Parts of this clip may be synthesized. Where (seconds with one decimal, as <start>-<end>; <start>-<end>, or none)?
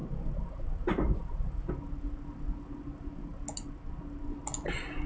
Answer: 0.0-1.7